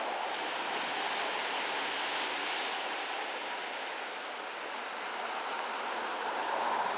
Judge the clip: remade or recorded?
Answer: recorded